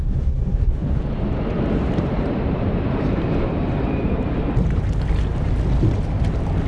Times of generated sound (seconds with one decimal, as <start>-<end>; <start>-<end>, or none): 0.8-4.8